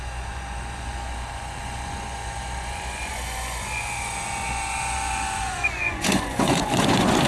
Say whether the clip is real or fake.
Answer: fake